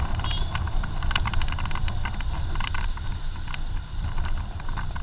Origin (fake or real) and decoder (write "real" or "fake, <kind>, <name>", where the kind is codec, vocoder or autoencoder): real